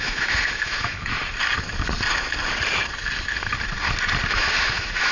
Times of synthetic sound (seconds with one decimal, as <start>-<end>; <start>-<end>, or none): 0.0-1.2; 4.3-5.1